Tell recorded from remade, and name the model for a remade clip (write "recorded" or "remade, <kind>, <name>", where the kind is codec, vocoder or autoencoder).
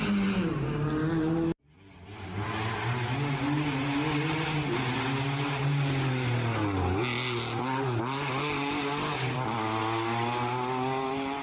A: recorded